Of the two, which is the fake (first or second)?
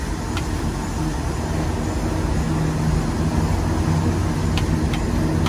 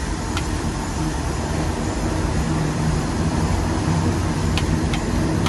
second